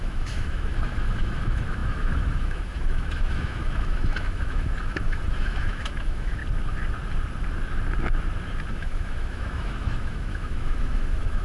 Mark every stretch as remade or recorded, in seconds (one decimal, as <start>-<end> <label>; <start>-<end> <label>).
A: 0.0-6.4 remade; 6.4-8.7 recorded; 8.7-11.4 remade